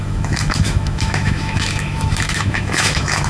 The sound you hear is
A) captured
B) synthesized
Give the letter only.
B